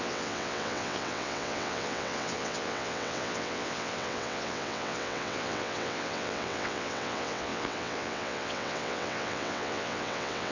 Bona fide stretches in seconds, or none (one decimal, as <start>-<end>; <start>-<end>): none

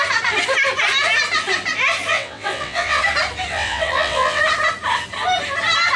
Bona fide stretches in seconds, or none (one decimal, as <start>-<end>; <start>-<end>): 0.0-2.1; 3.0-3.5; 4.4-6.0

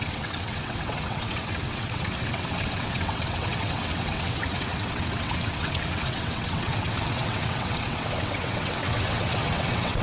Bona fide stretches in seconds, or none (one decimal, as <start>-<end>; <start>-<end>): none

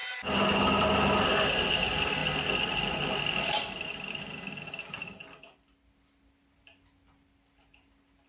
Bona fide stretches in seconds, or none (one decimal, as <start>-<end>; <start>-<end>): 0.0-8.3

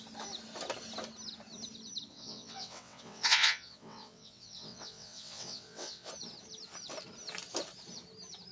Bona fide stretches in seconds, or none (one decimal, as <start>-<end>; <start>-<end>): 0.0-2.1; 6.1-8.5

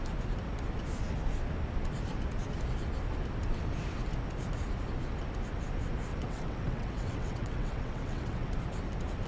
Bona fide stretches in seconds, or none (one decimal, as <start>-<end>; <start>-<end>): 0.0-6.1; 8.5-9.3

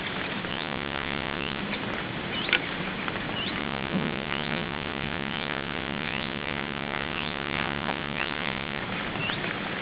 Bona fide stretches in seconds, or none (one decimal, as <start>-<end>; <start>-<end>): 0.0-0.5; 1.6-3.6; 8.8-9.8

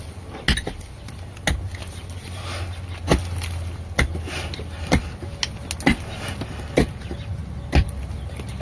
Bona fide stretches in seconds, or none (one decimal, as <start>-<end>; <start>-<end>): 0.0-8.6